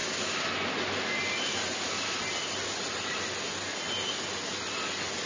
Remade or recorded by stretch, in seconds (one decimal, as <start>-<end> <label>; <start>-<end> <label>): 0.0-5.3 recorded